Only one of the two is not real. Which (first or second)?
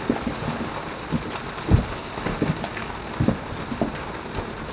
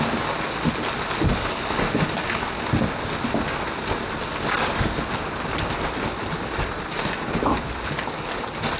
first